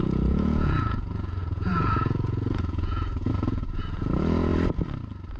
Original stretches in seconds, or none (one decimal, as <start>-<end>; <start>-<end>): 4.5-5.4